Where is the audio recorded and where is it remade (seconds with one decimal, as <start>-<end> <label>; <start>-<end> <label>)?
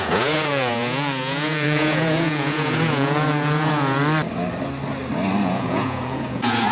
0.0-4.0 remade; 4.0-5.4 recorded; 5.4-6.7 remade